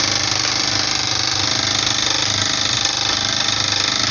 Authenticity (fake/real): real